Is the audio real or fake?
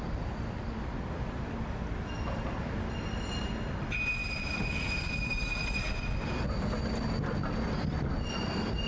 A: real